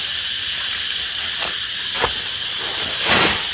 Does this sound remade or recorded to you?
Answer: recorded